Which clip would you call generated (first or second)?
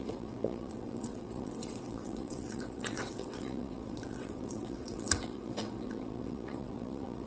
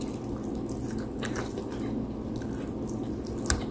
first